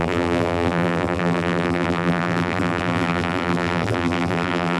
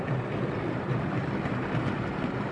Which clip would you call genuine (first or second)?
second